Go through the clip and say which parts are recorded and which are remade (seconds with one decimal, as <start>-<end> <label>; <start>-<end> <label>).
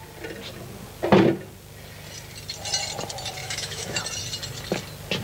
0.0-3.4 recorded; 3.4-4.0 remade; 4.0-5.2 recorded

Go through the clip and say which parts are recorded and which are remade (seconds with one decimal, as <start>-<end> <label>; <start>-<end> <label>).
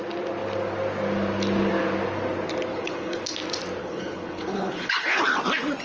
0.0-2.7 recorded; 2.7-3.2 remade; 3.2-3.8 recorded; 3.8-5.2 remade; 5.2-5.8 recorded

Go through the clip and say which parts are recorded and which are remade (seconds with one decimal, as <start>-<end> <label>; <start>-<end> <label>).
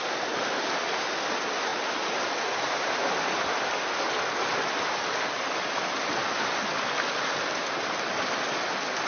0.0-9.1 recorded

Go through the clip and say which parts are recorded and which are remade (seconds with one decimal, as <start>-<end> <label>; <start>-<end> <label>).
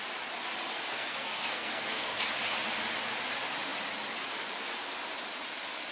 0.0-0.7 recorded; 0.7-2.2 remade; 2.2-5.9 recorded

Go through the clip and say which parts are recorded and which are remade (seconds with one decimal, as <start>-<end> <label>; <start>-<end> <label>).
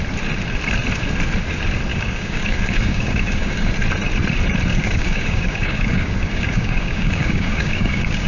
0.0-1.9 recorded; 1.9-3.7 remade; 3.7-4.7 recorded; 4.7-8.3 remade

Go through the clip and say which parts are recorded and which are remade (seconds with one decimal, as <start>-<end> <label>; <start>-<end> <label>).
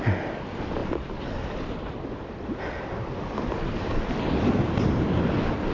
0.0-5.7 recorded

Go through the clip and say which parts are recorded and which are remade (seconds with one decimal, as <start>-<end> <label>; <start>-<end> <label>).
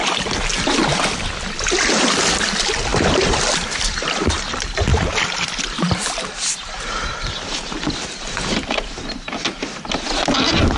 0.0-2.9 recorded; 2.9-4.3 remade; 4.3-4.9 recorded; 4.9-9.6 remade; 9.6-10.8 recorded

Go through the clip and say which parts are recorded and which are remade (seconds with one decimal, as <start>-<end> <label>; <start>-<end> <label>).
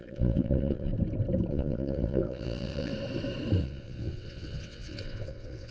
0.0-0.9 remade; 0.9-1.5 recorded; 1.5-2.9 remade; 2.9-3.6 recorded; 3.6-5.7 remade